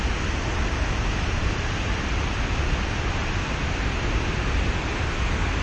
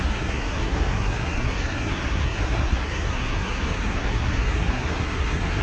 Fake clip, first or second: second